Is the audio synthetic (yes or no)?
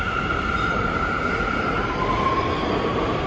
no